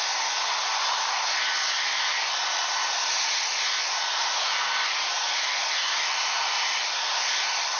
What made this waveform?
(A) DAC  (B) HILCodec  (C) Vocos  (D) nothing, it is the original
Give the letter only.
D